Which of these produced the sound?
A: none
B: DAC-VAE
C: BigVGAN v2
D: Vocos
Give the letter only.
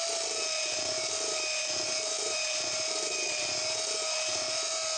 A